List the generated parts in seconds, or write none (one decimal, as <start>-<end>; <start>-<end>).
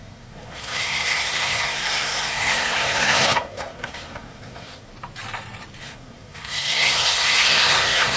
0.0-4.9; 5.8-8.2